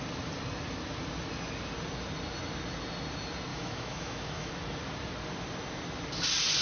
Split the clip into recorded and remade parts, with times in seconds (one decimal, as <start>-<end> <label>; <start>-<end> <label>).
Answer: 0.0-3.5 recorded; 3.5-4.5 remade; 4.5-6.6 recorded